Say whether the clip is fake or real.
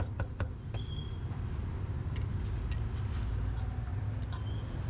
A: real